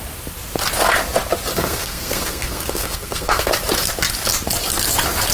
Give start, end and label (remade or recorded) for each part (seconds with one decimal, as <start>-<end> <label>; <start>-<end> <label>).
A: 0.0-1.5 recorded; 1.5-3.5 remade; 3.5-5.3 recorded